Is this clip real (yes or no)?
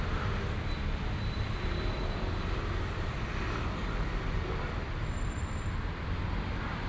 yes